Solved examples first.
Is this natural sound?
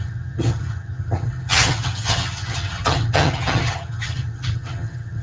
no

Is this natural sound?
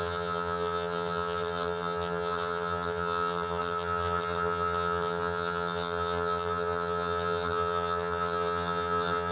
no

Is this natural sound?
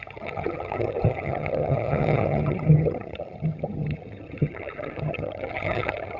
no